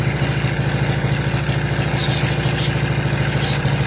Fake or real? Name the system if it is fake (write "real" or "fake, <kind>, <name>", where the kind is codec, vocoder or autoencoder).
real